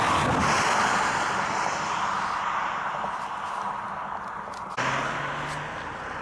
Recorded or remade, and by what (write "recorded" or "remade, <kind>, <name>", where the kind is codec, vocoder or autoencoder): recorded